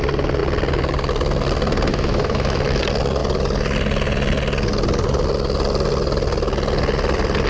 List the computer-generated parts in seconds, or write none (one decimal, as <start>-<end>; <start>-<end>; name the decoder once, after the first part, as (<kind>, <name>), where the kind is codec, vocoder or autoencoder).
1.9-2.8 (autoencoder, DAC-VAE)